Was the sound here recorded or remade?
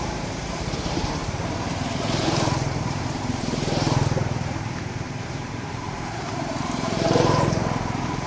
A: remade